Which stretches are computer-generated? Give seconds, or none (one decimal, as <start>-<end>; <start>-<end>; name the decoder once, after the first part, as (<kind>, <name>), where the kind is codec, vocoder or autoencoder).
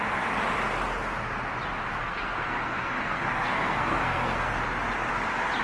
2.0-4.5 (codec, SNAC)